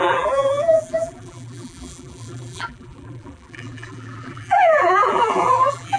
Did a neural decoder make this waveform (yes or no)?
yes